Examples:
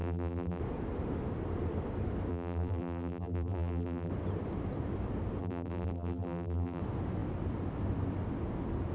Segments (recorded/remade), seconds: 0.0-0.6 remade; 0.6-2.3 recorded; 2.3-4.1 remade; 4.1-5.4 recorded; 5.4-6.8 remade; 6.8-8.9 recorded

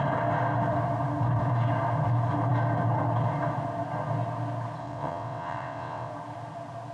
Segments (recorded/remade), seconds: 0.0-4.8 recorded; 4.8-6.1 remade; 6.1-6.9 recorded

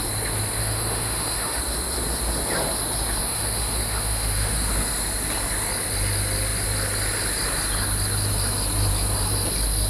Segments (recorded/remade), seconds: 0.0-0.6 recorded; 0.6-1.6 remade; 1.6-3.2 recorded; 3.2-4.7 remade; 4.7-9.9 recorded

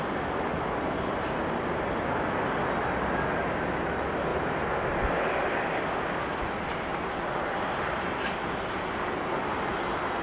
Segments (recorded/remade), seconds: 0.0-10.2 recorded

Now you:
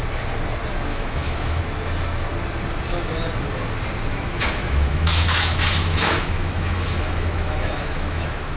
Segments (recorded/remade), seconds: 0.0-0.9 recorded; 0.9-1.6 remade; 1.6-4.1 recorded; 4.1-8.6 remade

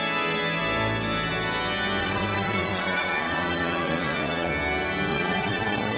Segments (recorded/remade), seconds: 0.0-2.0 recorded; 2.0-4.5 remade; 4.5-5.1 recorded; 5.1-6.0 remade

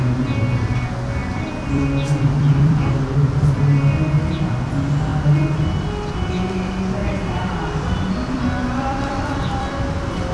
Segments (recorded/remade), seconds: 0.0-1.2 recorded; 1.2-3.5 remade; 3.5-7.0 recorded; 7.0-10.3 remade

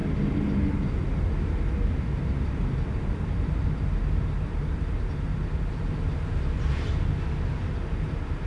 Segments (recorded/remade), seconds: 0.0-8.5 recorded